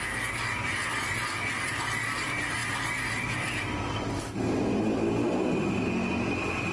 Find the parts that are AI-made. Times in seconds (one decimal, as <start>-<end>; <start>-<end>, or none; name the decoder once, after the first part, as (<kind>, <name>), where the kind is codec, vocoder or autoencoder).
none